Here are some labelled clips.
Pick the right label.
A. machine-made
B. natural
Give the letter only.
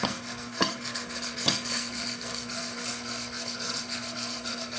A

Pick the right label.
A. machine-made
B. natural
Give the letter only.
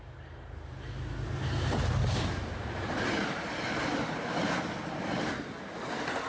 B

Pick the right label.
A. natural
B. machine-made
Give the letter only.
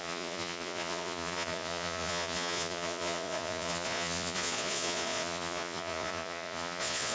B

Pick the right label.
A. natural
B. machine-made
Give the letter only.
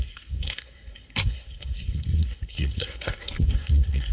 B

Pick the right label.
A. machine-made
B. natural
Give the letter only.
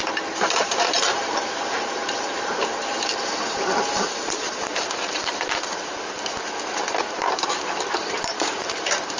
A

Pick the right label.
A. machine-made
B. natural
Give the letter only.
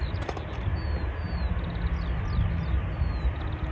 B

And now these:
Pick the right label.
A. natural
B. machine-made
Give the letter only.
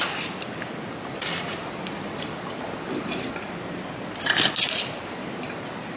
A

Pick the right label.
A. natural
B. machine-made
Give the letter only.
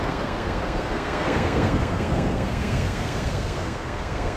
B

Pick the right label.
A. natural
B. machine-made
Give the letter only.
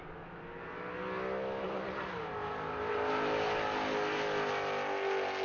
A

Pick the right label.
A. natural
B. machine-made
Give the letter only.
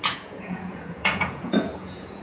B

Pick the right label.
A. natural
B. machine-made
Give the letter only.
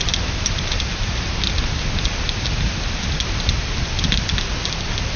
A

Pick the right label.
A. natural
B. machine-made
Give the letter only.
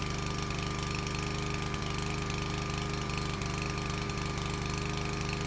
A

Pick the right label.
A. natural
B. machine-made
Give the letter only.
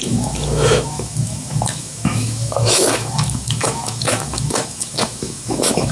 B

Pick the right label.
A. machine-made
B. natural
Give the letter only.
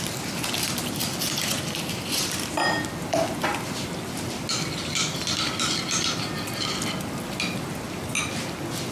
B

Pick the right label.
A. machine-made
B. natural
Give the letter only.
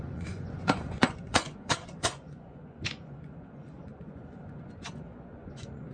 A